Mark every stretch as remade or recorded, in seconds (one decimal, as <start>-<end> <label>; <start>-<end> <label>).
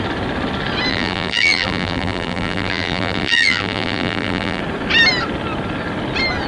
0.0-0.9 recorded; 0.9-4.6 remade; 4.6-6.5 recorded